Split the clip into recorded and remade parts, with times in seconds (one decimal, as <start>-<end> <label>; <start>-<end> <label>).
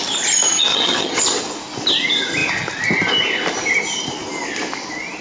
0.0-0.7 recorded; 0.7-1.2 remade; 1.2-5.2 recorded